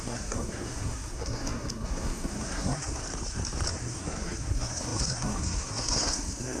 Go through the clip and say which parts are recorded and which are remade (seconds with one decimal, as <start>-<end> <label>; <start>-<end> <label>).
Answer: 0.0-3.0 remade; 3.0-3.7 recorded; 3.7-6.6 remade